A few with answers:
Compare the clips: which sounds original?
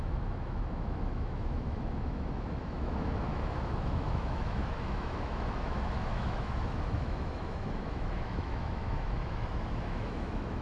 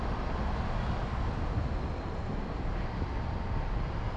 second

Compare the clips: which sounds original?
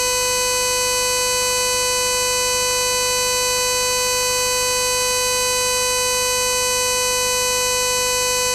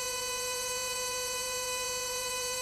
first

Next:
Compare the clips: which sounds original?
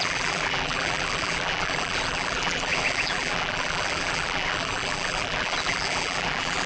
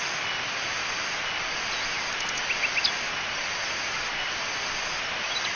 second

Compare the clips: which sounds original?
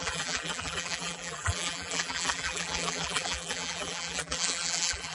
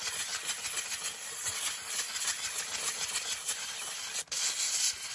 second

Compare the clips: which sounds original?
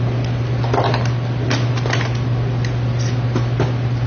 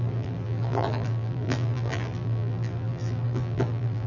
first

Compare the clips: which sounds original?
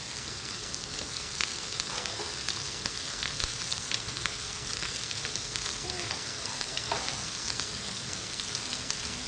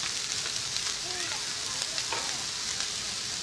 second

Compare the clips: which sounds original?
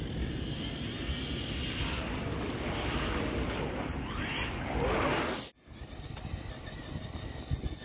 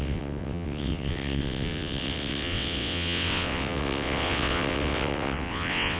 first